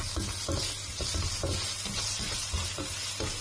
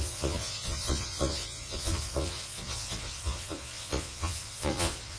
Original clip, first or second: first